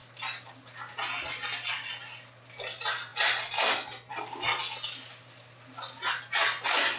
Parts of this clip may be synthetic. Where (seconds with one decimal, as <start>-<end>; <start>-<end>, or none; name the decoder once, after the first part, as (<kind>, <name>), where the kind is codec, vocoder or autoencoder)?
none